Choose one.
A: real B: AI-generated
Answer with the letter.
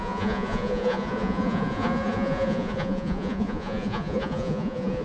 B